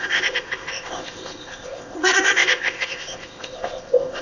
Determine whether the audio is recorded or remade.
remade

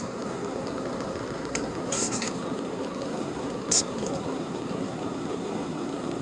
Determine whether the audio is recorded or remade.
remade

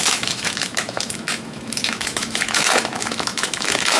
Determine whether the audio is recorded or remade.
remade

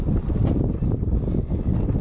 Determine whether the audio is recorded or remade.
recorded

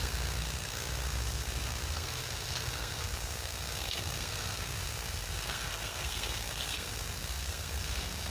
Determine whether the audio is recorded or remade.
remade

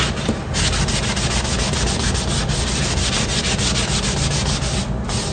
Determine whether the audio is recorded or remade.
recorded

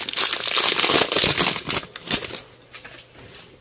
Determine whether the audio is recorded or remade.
recorded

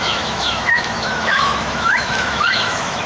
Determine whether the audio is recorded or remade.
remade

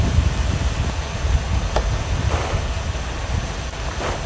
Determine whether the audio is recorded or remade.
recorded